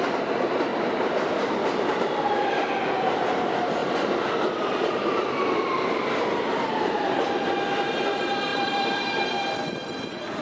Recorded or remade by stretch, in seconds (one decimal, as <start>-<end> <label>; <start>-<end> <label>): 0.0-0.7 recorded; 0.7-1.5 remade; 1.5-3.8 recorded; 3.8-7.5 remade; 7.5-8.5 recorded; 8.5-10.4 remade